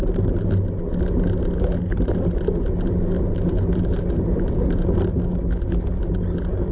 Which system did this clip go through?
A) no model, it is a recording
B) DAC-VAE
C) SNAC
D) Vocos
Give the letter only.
A